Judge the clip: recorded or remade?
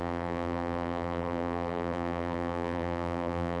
remade